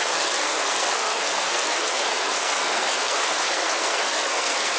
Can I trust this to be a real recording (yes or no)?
no